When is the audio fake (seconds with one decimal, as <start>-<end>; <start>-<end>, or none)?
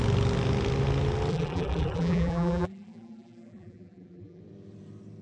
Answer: 1.3-4.4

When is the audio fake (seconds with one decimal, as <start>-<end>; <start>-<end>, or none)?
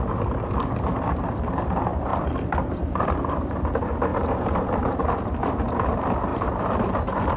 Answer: 4.1-5.0; 6.3-6.9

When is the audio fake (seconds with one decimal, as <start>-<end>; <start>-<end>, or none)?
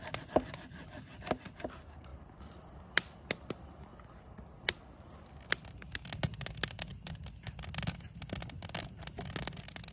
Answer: 2.1-4.3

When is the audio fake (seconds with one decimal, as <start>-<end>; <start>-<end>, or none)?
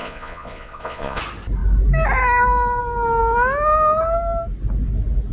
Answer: 0.0-1.2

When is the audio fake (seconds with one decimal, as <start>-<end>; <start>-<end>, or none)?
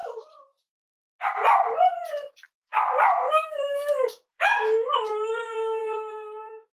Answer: 2.3-2.7; 3.3-6.7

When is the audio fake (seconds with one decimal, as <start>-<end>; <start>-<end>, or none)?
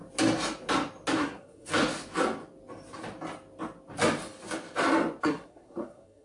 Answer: 1.2-1.7; 5.2-6.2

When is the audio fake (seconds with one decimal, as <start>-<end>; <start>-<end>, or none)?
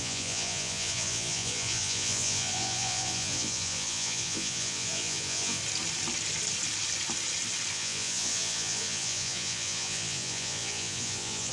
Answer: 0.0-5.6; 7.7-11.5